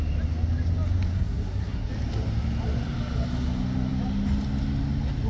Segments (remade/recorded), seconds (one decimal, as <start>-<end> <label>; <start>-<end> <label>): 0.0-1.1 recorded; 1.1-1.9 remade; 1.9-5.3 recorded

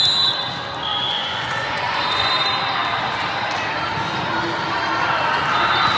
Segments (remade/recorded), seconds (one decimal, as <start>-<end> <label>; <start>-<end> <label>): 0.0-0.9 recorded; 0.9-2.3 remade; 2.3-6.0 recorded

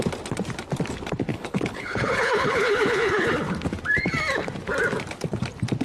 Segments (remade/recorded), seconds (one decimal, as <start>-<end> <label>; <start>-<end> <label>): 0.0-1.3 recorded; 1.3-3.3 remade; 3.3-5.8 recorded

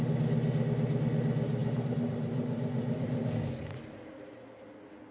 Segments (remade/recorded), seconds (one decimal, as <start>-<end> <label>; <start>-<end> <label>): 0.0-5.1 recorded

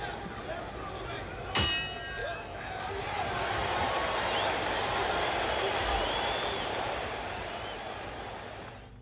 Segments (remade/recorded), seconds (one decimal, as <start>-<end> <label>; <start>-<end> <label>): 0.0-2.2 recorded; 2.2-2.8 remade; 2.8-9.0 recorded

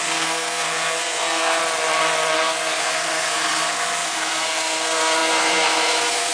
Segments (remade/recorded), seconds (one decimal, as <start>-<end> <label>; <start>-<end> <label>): 0.0-1.6 remade; 1.6-2.4 recorded; 2.4-6.3 remade